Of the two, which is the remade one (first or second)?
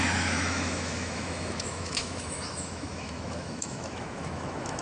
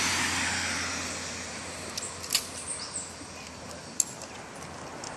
first